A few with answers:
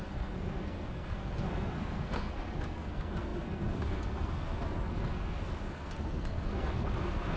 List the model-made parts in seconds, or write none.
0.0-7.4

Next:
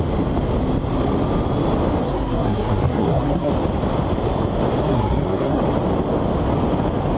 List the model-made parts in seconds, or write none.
2.0-3.5; 4.8-5.6